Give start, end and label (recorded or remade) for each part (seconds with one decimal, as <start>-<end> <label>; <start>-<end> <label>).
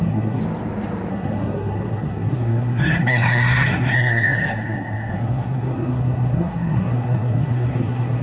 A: 0.0-0.4 remade; 0.4-1.1 recorded; 1.1-8.2 remade